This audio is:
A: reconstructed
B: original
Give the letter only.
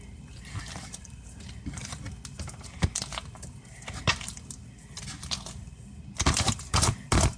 B